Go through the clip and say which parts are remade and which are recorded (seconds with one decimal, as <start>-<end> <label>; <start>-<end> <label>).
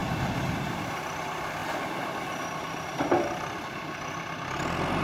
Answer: 0.0-5.0 recorded